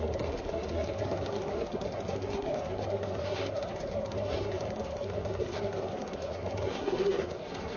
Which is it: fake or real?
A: fake